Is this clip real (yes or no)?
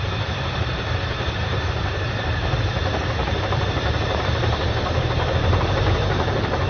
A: no